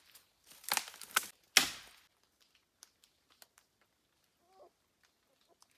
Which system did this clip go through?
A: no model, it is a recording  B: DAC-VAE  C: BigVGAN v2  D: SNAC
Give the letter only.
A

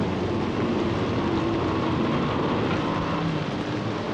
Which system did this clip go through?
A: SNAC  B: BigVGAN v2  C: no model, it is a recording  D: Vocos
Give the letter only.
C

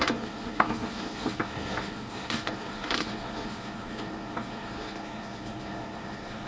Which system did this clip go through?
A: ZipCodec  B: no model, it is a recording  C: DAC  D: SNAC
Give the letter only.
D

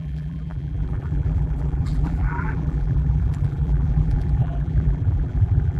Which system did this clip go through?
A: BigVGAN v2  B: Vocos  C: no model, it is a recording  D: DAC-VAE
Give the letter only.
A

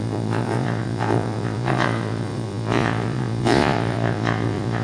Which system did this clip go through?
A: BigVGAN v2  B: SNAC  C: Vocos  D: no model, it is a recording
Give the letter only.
C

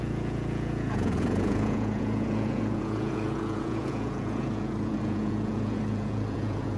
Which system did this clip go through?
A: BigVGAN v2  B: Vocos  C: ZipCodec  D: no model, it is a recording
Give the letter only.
B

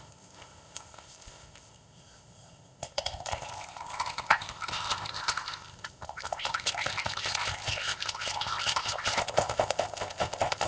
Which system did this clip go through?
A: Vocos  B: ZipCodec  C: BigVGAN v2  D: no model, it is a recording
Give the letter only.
B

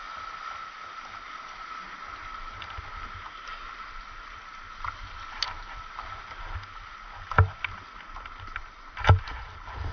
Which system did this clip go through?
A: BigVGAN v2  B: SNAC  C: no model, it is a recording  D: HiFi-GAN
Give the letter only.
C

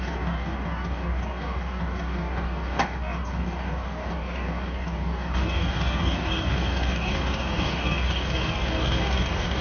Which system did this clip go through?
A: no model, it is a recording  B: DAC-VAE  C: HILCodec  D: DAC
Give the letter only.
D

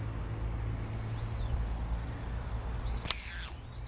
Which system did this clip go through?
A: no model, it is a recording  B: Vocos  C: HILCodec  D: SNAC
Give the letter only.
A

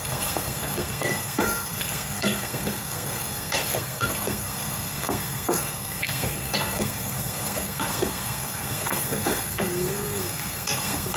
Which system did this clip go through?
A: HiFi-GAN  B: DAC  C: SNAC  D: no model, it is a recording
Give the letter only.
C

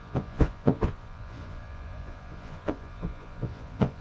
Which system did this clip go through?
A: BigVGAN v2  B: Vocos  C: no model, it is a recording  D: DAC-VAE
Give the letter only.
B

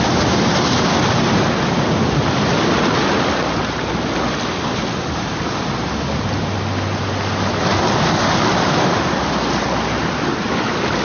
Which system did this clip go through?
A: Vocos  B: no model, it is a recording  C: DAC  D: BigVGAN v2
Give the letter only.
B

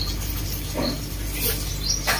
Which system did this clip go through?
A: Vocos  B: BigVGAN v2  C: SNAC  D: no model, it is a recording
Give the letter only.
B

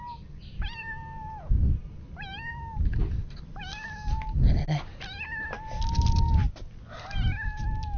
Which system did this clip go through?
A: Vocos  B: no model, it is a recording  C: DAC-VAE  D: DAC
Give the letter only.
B